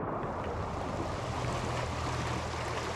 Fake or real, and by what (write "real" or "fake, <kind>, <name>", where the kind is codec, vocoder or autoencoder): real